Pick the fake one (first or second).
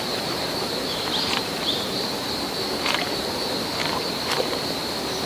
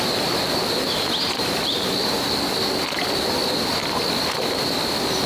first